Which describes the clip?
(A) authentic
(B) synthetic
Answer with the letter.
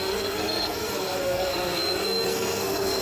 B